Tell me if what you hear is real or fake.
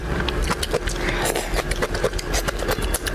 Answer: real